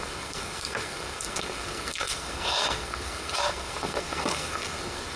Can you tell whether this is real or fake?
fake